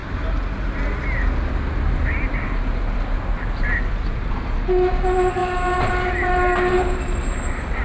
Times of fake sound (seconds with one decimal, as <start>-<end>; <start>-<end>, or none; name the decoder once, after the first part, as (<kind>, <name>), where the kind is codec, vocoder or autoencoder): none